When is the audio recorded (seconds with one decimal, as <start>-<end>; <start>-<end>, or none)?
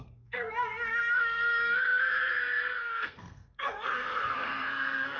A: none